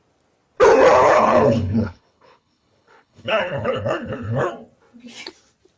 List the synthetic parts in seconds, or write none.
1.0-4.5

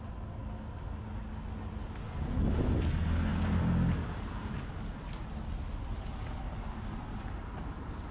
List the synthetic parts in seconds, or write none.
none